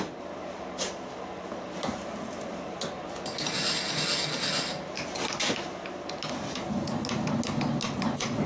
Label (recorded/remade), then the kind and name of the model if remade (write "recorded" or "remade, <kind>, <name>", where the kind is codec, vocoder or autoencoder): recorded